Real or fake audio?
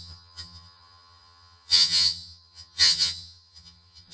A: fake